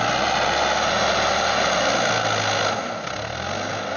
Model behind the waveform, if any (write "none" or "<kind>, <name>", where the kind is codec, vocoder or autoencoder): none